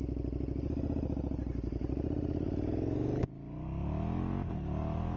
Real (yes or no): yes